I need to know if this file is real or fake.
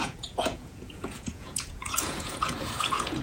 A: fake